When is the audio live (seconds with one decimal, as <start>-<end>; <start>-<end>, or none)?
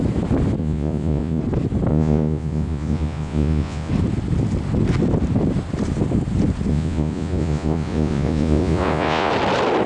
0.0-0.6; 1.4-1.9; 3.9-6.7; 9.3-9.9